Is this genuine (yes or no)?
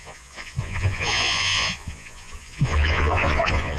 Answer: no